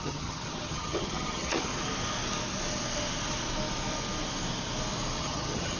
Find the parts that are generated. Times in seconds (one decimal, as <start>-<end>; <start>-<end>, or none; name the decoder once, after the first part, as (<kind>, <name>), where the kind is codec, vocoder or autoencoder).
0.0-1.7 (vocoder, HiFi-GAN); 5.2-5.8